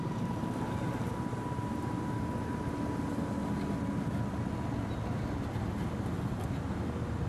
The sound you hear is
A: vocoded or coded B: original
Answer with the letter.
B